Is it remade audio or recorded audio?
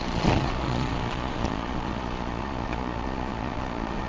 remade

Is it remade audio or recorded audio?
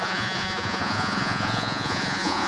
remade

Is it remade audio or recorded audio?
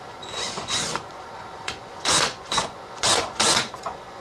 remade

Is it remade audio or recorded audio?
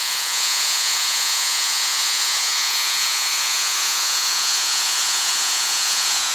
remade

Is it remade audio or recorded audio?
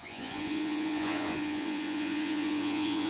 remade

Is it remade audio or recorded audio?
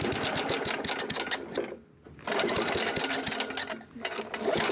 recorded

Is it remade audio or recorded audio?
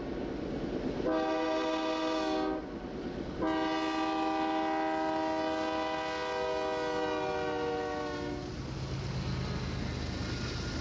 recorded